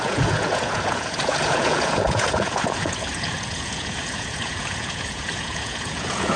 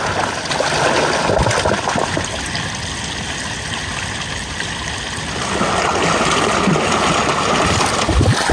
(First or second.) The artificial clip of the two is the first